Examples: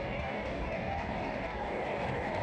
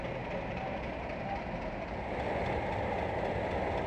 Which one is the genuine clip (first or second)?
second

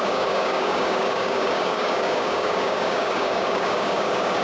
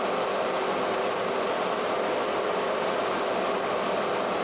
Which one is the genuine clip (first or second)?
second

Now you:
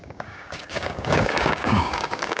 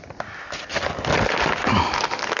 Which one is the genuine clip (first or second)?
second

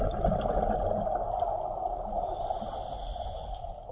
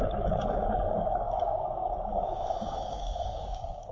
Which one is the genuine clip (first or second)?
first